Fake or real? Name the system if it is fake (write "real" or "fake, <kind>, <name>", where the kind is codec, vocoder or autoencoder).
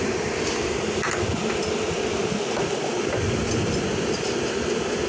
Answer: real